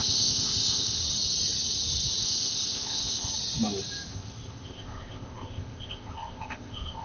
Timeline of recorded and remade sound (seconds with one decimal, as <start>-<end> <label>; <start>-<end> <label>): 0.0-1.0 remade; 1.0-2.2 recorded; 2.2-3.3 remade; 3.3-4.1 recorded; 4.1-7.0 remade